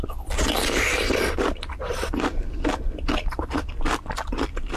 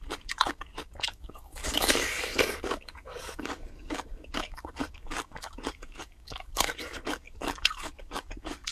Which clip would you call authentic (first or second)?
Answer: first